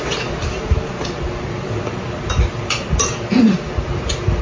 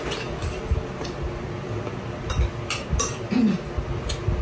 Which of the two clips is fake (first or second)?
first